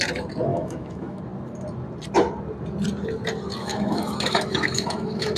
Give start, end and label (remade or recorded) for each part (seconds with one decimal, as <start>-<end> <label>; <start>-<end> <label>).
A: 0.0-0.5 recorded; 0.5-1.2 remade; 1.2-3.6 recorded; 3.6-5.4 remade